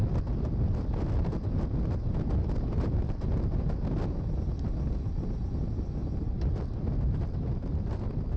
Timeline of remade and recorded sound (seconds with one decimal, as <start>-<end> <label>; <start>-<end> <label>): 0.0-8.4 recorded